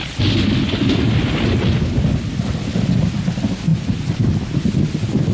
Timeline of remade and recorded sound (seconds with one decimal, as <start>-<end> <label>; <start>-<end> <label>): 0.0-5.3 recorded